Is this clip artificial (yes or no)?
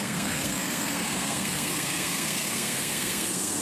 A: yes